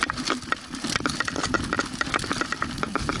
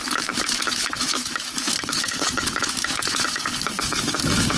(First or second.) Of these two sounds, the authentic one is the first